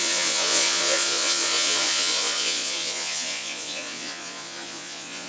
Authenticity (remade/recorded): remade